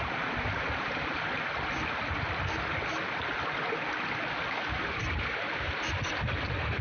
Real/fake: real